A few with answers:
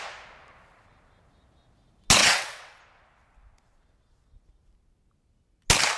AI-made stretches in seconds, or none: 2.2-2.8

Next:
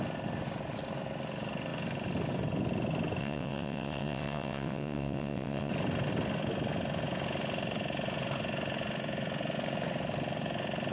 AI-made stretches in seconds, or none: 3.2-5.7

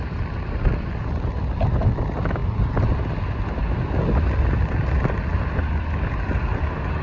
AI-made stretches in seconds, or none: none

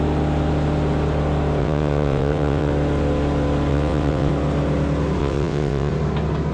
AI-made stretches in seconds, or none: 1.6-2.7; 3.7-4.3; 5.2-5.9

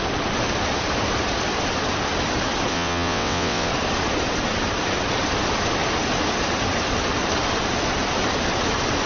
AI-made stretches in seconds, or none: 2.7-3.7

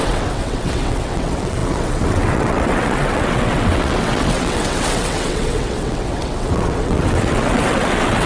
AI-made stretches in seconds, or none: 0.0-8.3

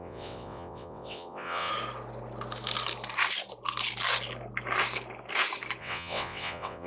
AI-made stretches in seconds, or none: 0.0-1.7; 5.8-6.9

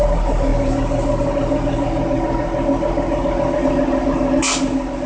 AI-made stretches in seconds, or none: none